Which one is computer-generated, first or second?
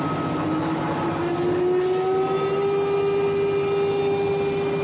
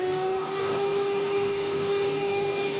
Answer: second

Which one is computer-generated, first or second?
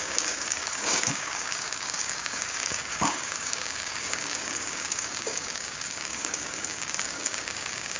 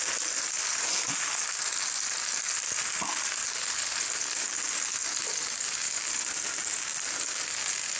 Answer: first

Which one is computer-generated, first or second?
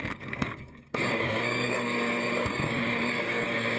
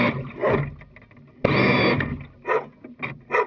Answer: first